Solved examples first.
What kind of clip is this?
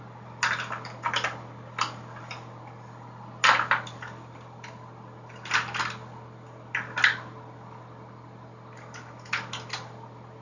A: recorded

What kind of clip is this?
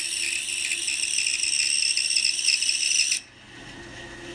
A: recorded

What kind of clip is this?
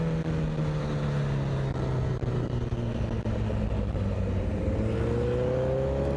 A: recorded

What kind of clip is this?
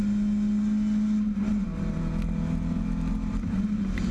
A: recorded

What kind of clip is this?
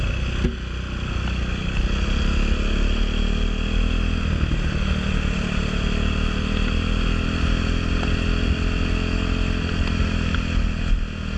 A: recorded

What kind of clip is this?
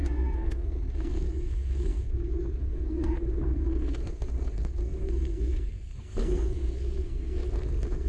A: remade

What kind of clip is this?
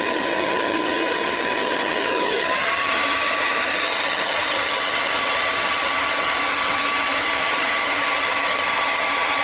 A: remade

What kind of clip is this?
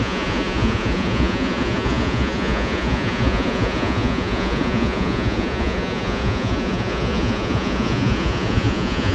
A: remade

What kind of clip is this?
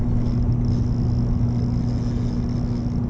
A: recorded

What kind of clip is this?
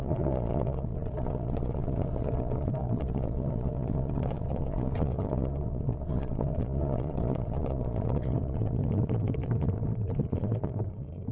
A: remade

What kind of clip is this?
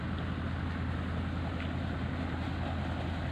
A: recorded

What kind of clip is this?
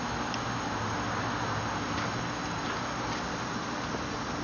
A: recorded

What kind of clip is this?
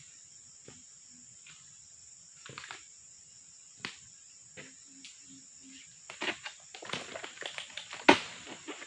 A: recorded